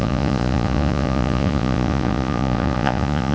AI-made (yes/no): yes